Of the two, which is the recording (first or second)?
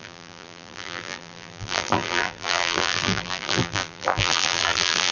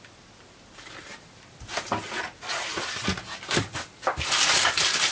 second